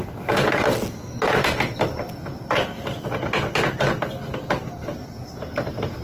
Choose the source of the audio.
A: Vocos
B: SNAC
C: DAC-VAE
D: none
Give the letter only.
D